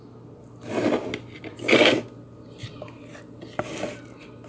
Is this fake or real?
real